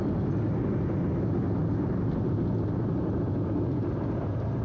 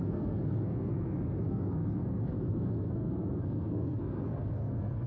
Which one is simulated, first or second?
second